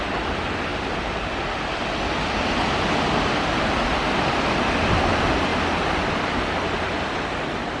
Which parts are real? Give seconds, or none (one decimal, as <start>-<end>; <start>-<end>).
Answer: 0.7-3.1